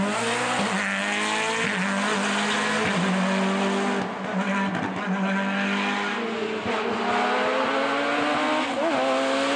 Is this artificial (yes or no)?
no